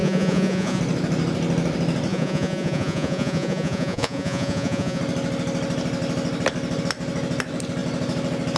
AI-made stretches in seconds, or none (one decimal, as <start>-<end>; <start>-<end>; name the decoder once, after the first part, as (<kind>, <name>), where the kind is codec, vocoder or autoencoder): 0.0-0.8 (vocoder, Vocos); 2.1-5.0